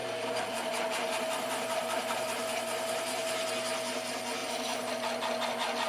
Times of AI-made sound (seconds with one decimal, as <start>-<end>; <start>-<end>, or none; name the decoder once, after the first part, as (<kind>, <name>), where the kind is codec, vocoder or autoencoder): 0.0-3.5 (vocoder, BigVGAN v2); 4.4-4.9